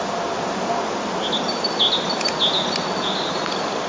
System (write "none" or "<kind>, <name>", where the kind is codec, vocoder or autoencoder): none